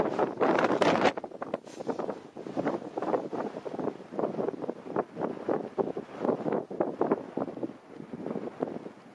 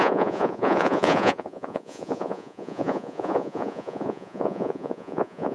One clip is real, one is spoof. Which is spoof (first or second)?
second